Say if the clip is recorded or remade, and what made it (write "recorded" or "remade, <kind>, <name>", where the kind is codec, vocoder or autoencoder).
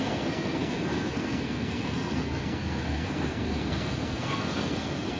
remade, codec, SNAC